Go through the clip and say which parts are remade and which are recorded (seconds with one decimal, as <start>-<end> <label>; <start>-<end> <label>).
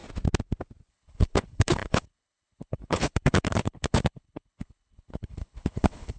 0.0-0.9 recorded; 0.9-6.2 remade